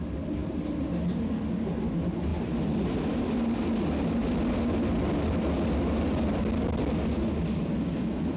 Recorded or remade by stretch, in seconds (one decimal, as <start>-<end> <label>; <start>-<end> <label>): 0.0-8.4 recorded